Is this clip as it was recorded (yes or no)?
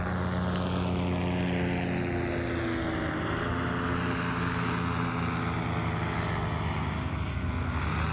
yes